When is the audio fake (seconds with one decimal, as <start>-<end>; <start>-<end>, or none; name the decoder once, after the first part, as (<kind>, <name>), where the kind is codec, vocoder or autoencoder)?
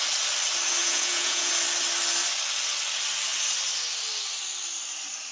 0.8-1.5 (vocoder, Vocos)